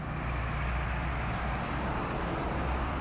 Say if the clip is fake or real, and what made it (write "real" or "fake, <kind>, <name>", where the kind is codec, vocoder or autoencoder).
real